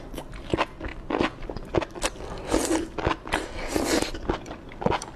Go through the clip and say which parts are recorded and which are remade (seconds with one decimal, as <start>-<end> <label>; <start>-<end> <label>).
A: 0.0-5.2 recorded